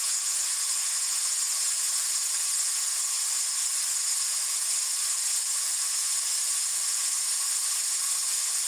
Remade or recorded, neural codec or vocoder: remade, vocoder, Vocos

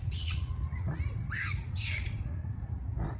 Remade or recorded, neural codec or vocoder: remade, vocoder, Vocos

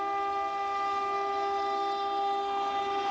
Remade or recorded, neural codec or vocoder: recorded